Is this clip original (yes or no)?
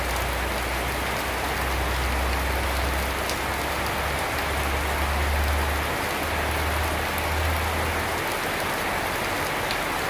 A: yes